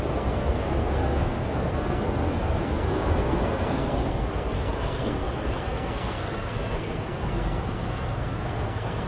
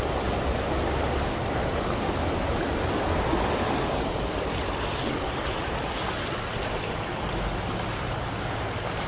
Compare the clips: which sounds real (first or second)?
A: second